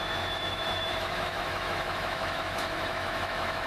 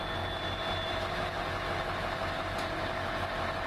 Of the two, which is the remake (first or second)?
first